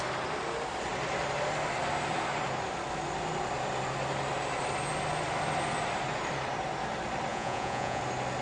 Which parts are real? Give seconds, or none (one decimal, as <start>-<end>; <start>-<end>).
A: 0.0-7.3; 8.0-8.4